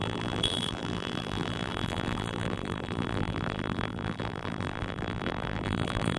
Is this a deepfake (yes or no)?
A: yes